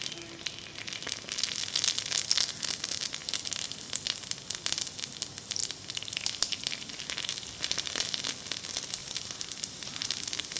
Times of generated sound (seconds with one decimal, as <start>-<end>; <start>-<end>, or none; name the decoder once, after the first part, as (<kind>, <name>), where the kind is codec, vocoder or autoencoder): 3.2-3.9 (vocoder, BigVGAN v2); 9.0-10.2